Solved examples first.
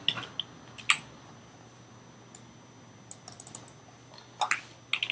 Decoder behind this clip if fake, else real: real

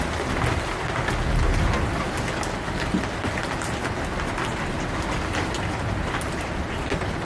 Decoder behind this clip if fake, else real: real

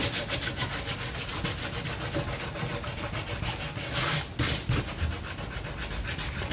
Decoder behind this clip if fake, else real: real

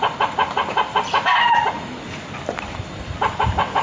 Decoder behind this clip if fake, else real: real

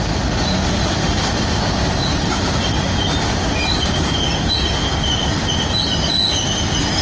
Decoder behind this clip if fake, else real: real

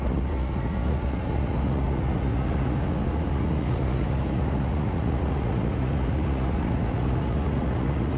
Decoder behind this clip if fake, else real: fake, vocoder, Vocos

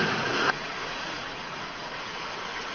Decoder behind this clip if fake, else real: fake, vocoder, Vocos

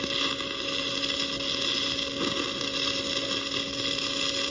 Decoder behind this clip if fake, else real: real